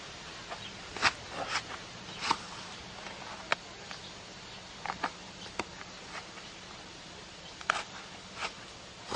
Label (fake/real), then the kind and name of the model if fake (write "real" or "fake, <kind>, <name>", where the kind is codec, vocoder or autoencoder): real